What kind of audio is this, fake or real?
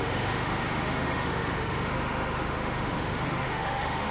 fake